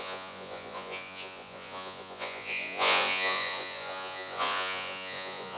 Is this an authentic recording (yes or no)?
no